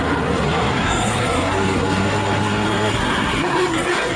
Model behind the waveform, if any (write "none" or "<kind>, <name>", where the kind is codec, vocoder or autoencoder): codec, SNAC